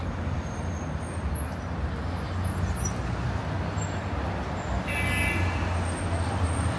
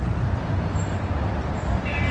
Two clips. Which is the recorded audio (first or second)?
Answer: first